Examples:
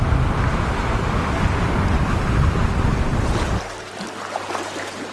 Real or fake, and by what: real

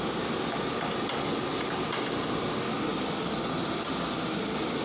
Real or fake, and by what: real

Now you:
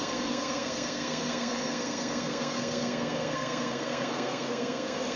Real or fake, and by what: fake, codec, SNAC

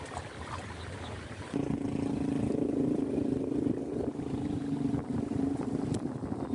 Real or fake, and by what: real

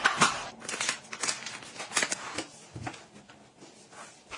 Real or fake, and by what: real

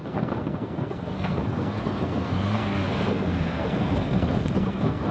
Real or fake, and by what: fake, codec, SNAC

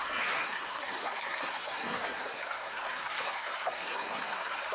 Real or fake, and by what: fake, codec, SNAC